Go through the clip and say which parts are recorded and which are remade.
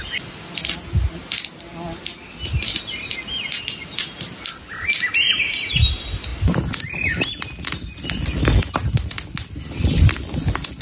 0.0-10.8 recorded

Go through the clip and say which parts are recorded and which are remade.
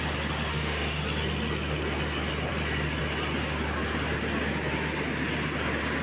0.0-0.5 recorded; 0.5-1.0 remade; 1.0-6.0 recorded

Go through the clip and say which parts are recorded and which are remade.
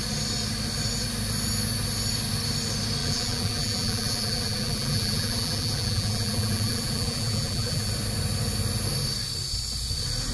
0.0-3.0 recorded; 3.0-7.9 remade; 7.9-10.3 recorded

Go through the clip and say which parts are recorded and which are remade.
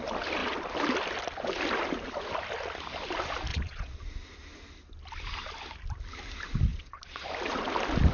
0.0-3.5 recorded; 3.5-4.0 remade; 4.0-6.7 recorded; 6.7-7.3 remade; 7.3-8.1 recorded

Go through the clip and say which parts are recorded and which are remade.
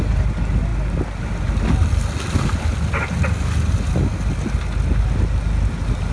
0.0-6.1 recorded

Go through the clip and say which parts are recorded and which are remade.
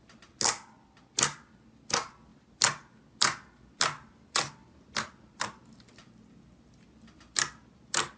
0.0-8.2 recorded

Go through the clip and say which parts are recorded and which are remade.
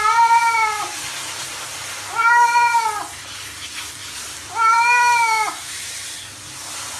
0.0-7.0 recorded